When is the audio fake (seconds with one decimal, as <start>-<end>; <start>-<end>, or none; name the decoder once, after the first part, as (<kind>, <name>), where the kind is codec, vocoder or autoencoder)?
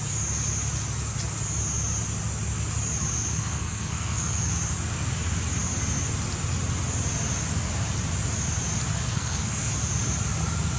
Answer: 3.3-4.5 (codec, SNAC); 9.1-9.7